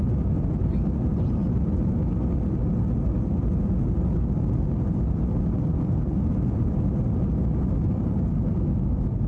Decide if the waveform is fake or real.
real